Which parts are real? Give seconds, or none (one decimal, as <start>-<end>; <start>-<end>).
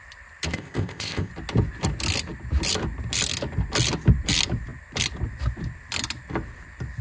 0.0-0.5; 1.3-7.0